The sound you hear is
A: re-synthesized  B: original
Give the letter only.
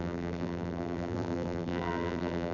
A